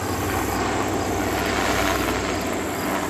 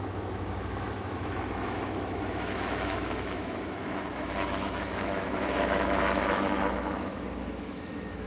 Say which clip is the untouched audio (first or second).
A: first